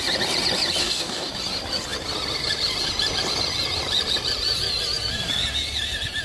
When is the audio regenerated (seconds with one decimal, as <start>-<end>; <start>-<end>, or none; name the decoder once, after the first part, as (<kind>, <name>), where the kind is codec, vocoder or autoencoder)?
0.8-1.3 (codec, DAC)